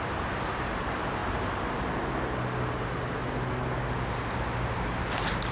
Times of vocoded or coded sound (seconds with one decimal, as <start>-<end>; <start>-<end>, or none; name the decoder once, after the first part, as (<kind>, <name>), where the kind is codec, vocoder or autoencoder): none